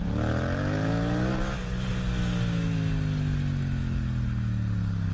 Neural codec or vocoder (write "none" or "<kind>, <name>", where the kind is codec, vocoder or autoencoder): none